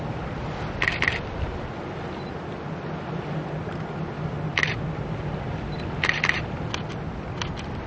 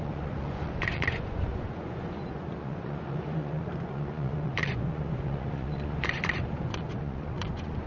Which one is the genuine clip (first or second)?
first